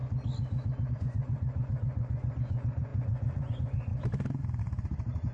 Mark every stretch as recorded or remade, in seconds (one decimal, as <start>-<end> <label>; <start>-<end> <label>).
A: 0.0-0.9 recorded; 0.9-3.9 remade; 3.9-4.6 recorded; 4.6-5.3 remade